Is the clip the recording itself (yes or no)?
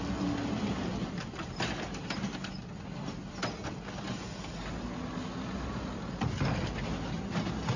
yes